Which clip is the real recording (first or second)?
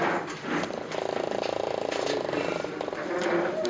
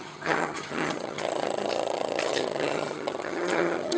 first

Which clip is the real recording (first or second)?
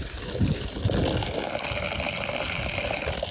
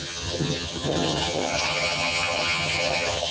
first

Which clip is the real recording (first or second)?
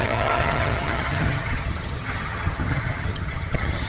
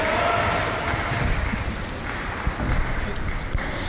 second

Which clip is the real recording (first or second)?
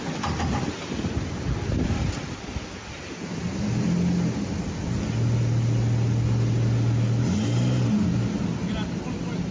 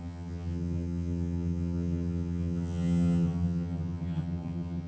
first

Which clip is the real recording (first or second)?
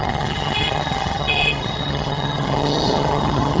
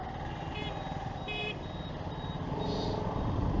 second